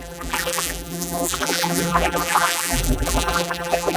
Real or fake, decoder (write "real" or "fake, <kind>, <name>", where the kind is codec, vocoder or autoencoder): fake, vocoder, BigVGAN v2